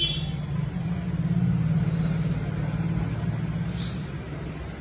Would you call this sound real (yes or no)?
yes